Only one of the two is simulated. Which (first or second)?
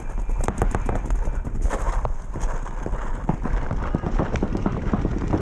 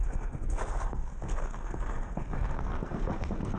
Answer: second